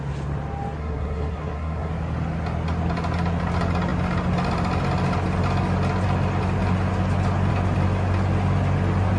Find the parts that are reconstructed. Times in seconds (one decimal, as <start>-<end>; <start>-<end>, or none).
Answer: 0.8-1.9